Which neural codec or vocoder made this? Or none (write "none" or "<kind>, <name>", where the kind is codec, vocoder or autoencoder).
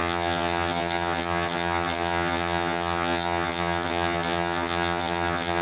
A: vocoder, HiFi-GAN